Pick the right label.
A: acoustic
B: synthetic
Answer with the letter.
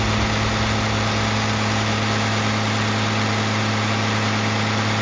A